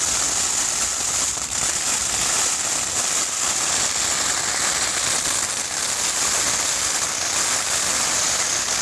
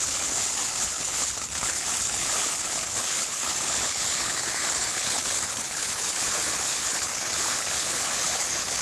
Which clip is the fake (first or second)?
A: second